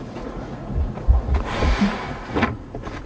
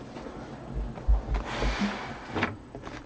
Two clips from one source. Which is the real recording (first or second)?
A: second